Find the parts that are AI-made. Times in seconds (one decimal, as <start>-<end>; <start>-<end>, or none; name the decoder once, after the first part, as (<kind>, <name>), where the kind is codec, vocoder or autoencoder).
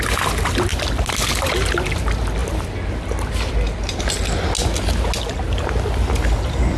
none